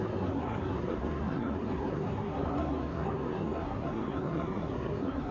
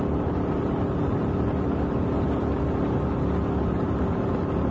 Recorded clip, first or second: second